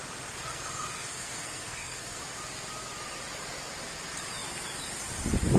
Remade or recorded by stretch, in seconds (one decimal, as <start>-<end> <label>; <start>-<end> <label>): 0.0-0.4 recorded; 0.4-2.2 remade; 2.2-5.6 recorded